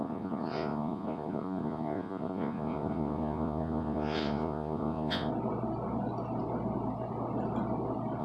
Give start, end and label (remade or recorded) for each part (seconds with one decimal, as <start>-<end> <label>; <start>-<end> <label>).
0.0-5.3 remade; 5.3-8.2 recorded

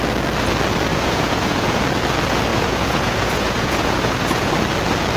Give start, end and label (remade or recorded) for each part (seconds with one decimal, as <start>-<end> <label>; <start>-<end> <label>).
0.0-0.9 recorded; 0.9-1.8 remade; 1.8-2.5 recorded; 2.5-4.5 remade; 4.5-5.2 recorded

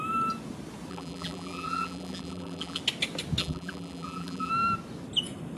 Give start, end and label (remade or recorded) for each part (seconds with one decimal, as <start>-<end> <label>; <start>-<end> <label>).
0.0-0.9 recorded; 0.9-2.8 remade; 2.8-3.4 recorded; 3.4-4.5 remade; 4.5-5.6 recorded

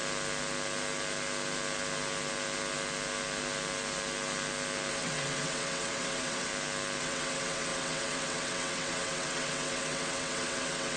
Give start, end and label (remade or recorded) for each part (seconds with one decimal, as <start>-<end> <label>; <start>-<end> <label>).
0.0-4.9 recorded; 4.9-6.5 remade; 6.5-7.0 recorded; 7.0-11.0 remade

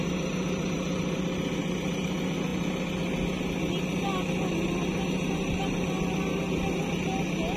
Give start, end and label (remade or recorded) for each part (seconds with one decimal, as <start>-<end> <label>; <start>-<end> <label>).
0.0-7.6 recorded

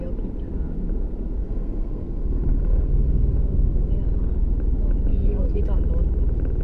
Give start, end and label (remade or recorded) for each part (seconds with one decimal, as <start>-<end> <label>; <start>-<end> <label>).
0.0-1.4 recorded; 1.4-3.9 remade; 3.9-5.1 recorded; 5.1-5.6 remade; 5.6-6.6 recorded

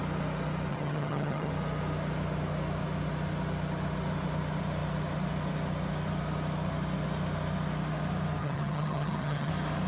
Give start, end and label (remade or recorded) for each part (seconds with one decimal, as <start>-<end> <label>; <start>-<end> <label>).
0.0-0.7 recorded; 0.7-1.5 remade; 1.5-8.4 recorded; 8.4-9.5 remade; 9.5-9.9 recorded